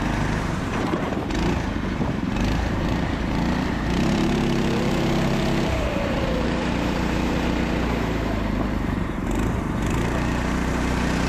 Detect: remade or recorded remade